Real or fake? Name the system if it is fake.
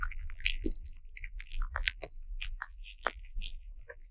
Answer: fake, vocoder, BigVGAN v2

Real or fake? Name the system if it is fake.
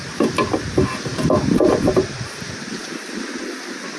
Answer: real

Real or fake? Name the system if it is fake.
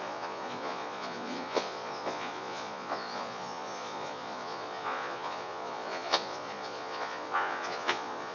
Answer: fake, vocoder, Vocos